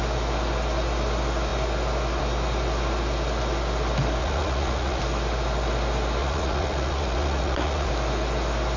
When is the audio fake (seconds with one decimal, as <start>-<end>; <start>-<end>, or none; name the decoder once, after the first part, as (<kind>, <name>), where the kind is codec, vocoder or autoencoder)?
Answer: 4.2-5.0 (vocoder, Vocos); 6.2-7.9

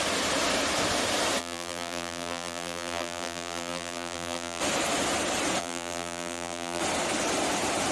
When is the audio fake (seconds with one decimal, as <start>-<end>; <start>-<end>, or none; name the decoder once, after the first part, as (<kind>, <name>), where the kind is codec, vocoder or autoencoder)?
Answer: 1.4-4.6 (vocoder, BigVGAN v2); 5.6-6.8

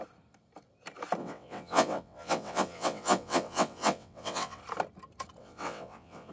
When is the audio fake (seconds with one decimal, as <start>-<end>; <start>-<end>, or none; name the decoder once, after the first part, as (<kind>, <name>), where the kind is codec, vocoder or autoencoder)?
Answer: 1.2-4.6 (vocoder, WaveNeXt); 5.4-6.3

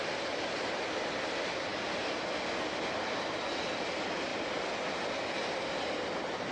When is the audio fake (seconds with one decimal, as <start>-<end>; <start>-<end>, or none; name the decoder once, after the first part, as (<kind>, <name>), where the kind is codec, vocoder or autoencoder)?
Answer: none

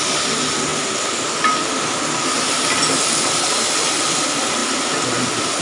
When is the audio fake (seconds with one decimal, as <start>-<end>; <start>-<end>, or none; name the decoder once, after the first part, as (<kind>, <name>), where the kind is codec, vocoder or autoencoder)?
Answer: 0.0-0.7 (vocoder, BigVGAN v2); 4.1-5.6

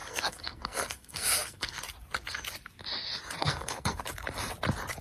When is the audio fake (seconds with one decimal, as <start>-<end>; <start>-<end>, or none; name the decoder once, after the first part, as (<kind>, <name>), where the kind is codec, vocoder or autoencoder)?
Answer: 0.0-1.8 (codec, SNAC); 3.4-4.0